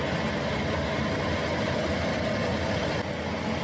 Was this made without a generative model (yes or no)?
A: yes